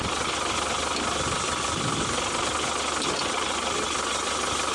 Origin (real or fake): real